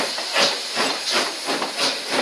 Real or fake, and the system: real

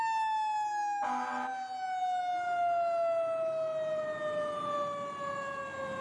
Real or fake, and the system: real